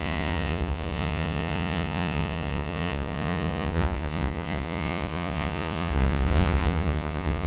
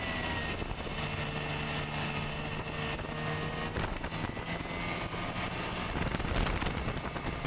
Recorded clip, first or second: second